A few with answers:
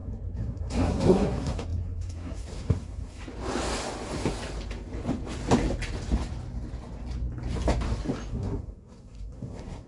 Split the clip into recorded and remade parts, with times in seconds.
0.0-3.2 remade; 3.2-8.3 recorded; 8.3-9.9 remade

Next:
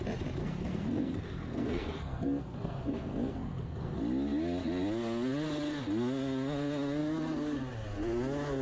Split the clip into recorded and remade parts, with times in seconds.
0.0-0.4 recorded; 0.4-4.0 remade; 4.0-8.6 recorded

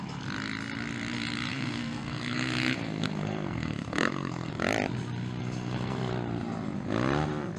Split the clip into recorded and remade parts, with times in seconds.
0.0-1.5 recorded; 1.5-4.5 remade; 4.5-5.4 recorded; 5.4-6.1 remade; 6.1-7.6 recorded